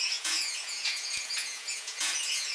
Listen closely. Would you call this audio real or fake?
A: fake